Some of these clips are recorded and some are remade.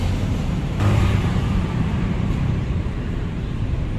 remade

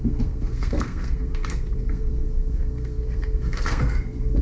remade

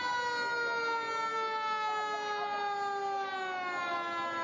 recorded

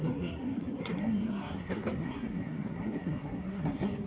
remade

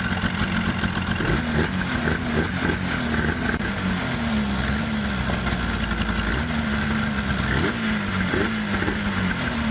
recorded